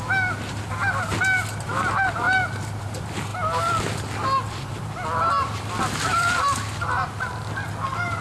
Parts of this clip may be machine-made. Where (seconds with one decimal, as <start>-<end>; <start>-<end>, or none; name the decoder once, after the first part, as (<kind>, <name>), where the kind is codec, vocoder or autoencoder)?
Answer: none